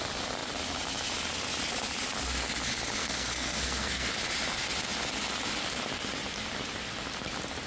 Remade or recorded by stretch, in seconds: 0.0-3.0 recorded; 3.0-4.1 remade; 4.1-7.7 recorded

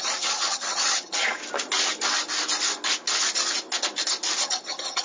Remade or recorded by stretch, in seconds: 0.0-1.4 remade; 1.4-4.4 recorded; 4.4-5.0 remade

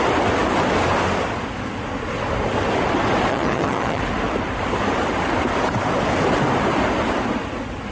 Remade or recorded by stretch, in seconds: 0.0-3.3 recorded; 3.3-4.0 remade; 4.0-7.9 recorded

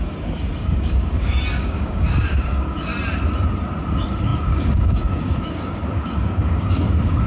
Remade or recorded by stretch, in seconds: 0.0-2.9 remade; 2.9-3.9 recorded; 3.9-7.3 remade